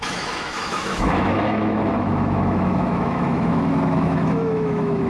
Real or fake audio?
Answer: fake